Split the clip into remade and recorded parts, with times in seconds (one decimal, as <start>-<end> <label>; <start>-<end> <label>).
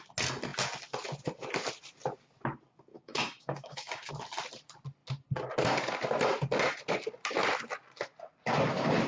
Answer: 0.0-2.9 recorded; 2.9-4.1 remade; 4.1-9.1 recorded